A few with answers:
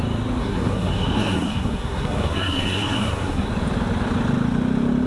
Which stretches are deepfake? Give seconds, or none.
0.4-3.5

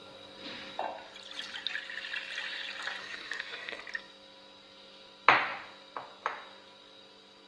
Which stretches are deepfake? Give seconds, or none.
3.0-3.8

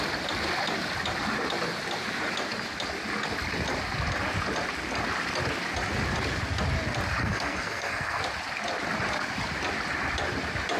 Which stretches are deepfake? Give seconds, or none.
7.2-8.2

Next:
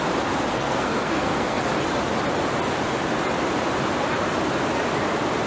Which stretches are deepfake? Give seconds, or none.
0.5-1.6

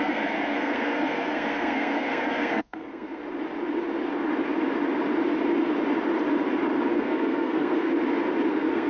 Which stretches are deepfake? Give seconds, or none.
0.0-3.2; 6.9-7.9; 8.5-8.9